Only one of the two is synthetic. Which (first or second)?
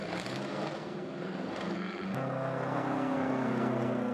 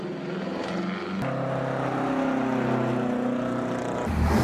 first